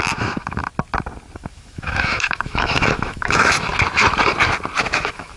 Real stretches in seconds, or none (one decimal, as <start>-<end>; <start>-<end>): 0.6-1.5; 3.7-4.8

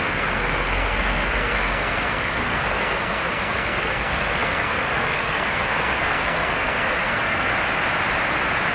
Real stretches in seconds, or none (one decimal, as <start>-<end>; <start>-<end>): 7.5-8.7

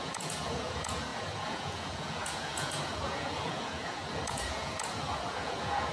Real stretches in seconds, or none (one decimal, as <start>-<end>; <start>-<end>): none

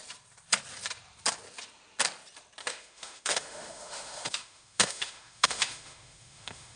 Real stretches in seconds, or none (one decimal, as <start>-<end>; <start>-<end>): 0.0-2.6

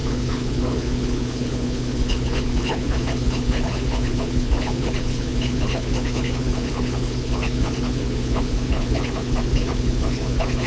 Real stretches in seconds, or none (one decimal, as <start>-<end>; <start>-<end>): none

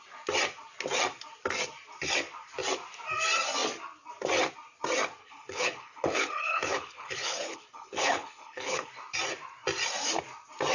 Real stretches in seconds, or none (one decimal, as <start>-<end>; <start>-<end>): 0.0-5.2; 8.9-10.7